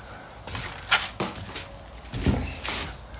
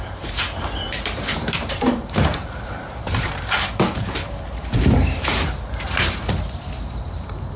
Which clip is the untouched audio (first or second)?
first